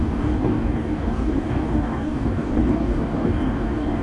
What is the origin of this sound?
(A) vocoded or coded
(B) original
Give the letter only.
A